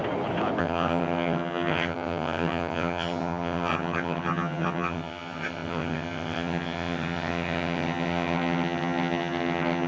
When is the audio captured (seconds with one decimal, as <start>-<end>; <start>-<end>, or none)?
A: 0.0-0.6